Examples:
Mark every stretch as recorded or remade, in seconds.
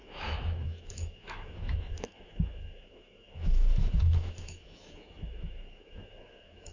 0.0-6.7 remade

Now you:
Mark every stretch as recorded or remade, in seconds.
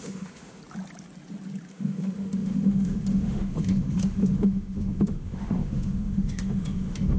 0.0-0.6 remade; 0.6-1.7 recorded; 1.7-7.2 remade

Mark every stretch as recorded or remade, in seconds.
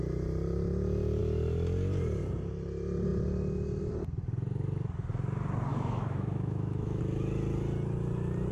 0.0-5.7 recorded; 5.7-7.0 remade; 7.0-8.5 recorded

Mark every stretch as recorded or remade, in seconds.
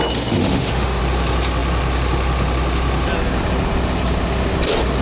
0.0-0.4 recorded; 0.4-1.0 remade; 1.0-5.0 recorded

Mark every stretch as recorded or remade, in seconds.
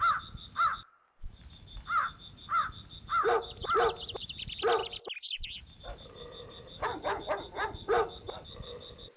0.0-9.2 recorded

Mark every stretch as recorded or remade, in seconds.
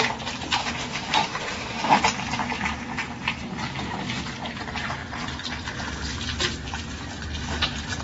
0.0-0.6 recorded; 0.6-2.0 remade; 2.0-8.0 recorded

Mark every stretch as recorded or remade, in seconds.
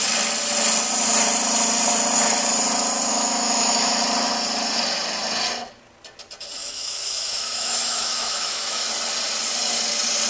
0.0-3.1 recorded; 3.1-4.0 remade; 4.0-6.6 recorded; 6.6-8.9 remade; 8.9-10.3 recorded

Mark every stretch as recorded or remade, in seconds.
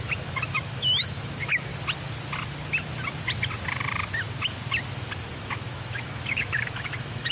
0.0-1.7 remade; 1.7-5.3 recorded; 5.3-7.3 remade